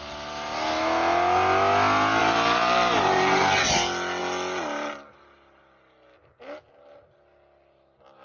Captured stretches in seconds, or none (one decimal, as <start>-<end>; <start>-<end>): 0.0-2.2; 3.6-8.2

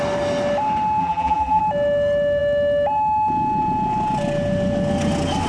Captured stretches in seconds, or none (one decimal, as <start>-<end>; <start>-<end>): 0.0-1.0; 1.6-5.5

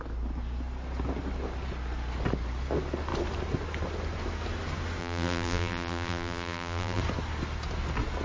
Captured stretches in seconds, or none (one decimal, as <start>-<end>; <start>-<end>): 0.0-5.0; 7.0-8.2

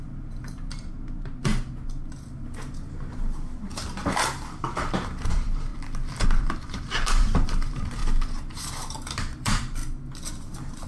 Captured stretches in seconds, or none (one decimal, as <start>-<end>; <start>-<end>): 1.5-5.3; 5.7-6.4; 8.0-9.4; 9.8-10.3

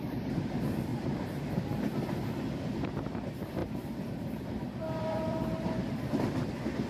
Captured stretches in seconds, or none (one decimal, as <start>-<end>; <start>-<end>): 0.0-0.9; 1.4-3.6; 5.9-6.9

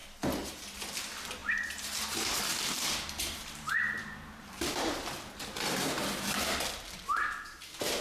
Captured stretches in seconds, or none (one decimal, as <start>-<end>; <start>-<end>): 0.0-1.4; 5.0-8.0